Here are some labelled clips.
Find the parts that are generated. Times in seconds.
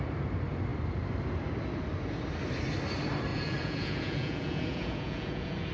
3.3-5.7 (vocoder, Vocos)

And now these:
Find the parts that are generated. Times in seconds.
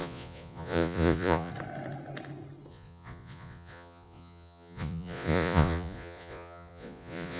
0.0-1.5 (vocoder, Vocos); 2.7-7.4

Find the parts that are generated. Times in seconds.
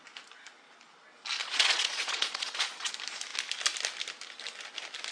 1.4-2.9 (vocoder, Vocos)